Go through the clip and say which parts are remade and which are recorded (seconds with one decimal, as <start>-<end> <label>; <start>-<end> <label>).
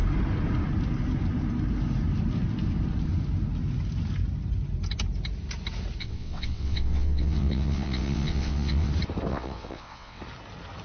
0.0-6.0 recorded; 6.0-8.9 remade; 8.9-9.3 recorded; 9.3-10.2 remade; 10.2-10.8 recorded